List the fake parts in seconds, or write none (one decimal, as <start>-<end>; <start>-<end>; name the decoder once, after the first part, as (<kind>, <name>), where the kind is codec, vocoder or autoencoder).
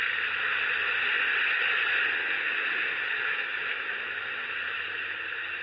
2.2-4.5 (autoencoder, DAC-VAE)